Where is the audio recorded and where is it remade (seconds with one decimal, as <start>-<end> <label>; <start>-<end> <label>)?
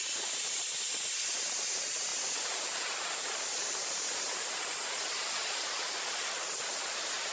0.0-7.3 recorded